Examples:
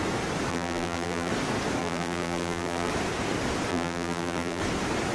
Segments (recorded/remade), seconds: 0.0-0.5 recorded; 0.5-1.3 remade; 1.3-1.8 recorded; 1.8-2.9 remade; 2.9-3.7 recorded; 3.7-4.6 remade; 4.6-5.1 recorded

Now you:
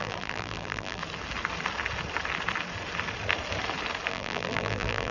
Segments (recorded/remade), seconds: 0.0-1.0 remade; 1.0-4.1 recorded; 4.1-5.1 remade

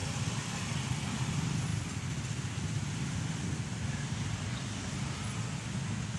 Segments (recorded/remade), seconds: 0.0-0.6 remade; 0.6-6.2 recorded

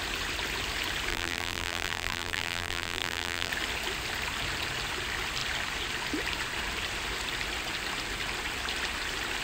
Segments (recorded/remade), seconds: 0.0-1.1 recorded; 1.1-3.5 remade; 3.5-9.4 recorded

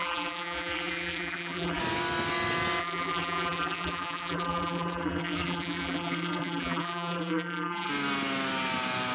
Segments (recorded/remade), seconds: 0.0-1.8 remade; 1.8-2.8 recorded; 2.8-7.9 remade; 7.9-9.1 recorded

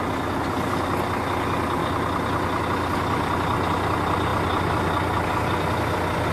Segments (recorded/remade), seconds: 0.0-6.3 recorded